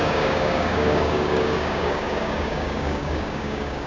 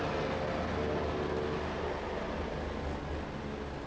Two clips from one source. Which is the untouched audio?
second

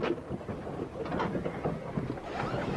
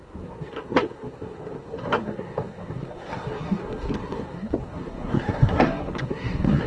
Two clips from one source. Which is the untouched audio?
first